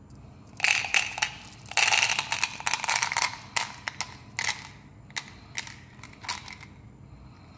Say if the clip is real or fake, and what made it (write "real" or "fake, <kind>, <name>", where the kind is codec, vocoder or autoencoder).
real